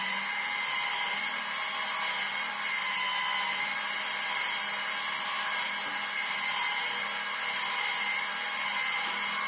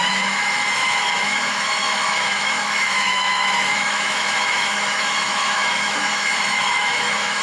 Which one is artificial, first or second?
second